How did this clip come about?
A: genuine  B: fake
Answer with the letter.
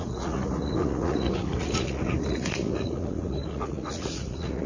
B